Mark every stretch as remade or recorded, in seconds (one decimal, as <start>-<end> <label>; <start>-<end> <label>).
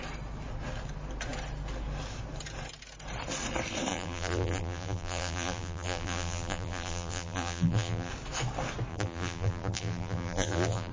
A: 0.0-3.9 recorded; 3.9-8.1 remade; 8.1-8.9 recorded; 8.9-10.9 remade